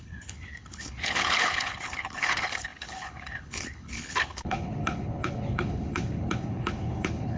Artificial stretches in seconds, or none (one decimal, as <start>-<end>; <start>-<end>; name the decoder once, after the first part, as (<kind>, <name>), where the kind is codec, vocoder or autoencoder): 0.0-7.4 (codec, HILCodec)